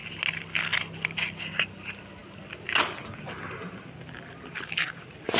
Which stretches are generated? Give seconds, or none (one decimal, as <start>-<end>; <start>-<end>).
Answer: 1.5-2.2